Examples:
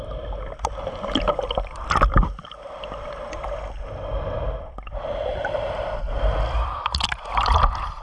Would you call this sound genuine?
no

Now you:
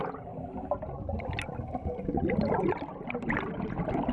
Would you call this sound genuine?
yes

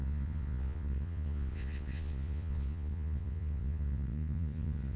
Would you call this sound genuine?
no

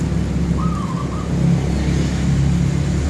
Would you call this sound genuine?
yes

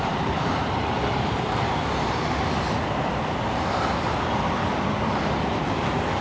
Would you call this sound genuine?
no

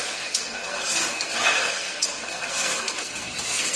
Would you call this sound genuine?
no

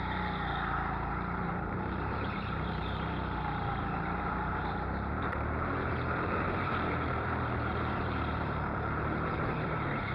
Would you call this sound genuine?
no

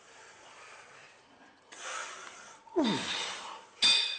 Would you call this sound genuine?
yes